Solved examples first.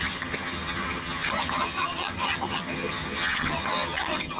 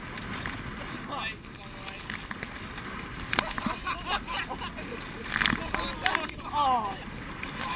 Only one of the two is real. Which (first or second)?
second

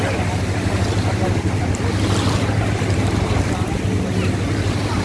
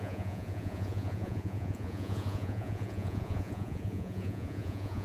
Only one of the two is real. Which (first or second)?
first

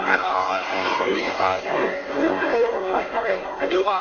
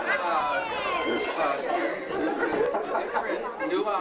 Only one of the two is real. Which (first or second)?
second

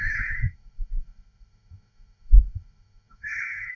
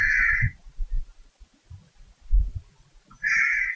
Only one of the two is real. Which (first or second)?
second